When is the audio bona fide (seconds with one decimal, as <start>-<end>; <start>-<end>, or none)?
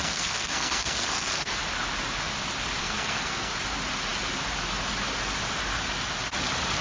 1.6-2.8; 3.5-6.8